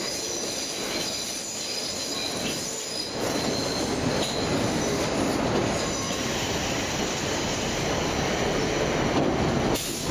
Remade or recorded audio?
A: recorded